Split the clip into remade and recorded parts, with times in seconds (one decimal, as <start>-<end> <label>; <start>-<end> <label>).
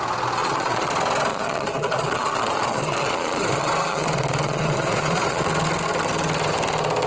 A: 0.0-0.4 recorded; 0.4-0.9 remade; 0.9-1.3 recorded; 1.3-5.5 remade; 5.5-7.1 recorded